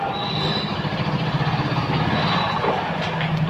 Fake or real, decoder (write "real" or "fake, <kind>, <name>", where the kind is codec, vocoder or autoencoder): real